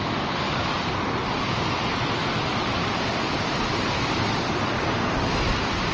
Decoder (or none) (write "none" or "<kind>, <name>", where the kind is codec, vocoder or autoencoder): none